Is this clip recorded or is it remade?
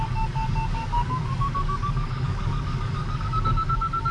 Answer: remade